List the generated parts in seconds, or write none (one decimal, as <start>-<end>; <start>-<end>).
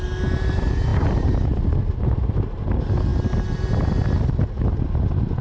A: none